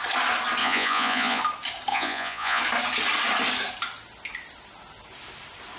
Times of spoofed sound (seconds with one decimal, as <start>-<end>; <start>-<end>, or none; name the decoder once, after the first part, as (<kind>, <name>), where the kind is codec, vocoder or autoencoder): 0.6-1.4 (vocoder, Vocos); 1.9-2.6